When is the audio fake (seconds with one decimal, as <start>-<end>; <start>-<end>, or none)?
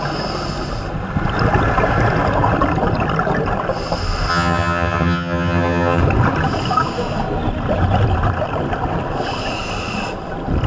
4.3-6.0